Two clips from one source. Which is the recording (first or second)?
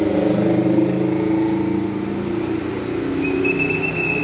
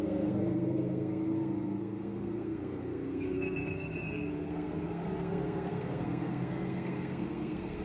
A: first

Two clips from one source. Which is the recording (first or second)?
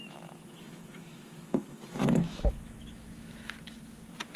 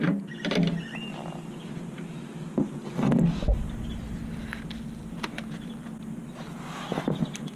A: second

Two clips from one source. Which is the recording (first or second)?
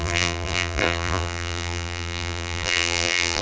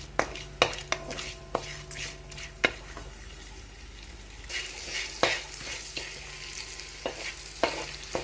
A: second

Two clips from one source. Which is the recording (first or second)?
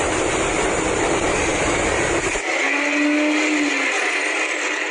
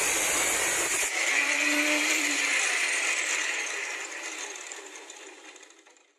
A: first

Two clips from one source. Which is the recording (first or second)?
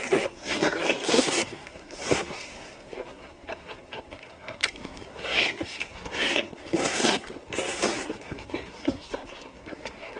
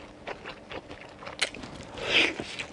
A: second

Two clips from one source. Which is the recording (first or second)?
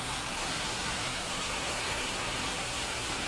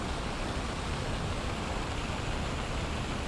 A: second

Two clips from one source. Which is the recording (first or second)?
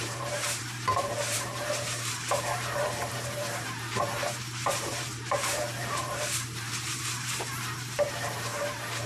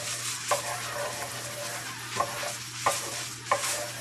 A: second